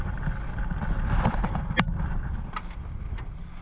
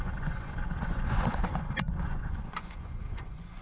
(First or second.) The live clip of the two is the first